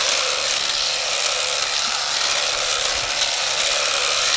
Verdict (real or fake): real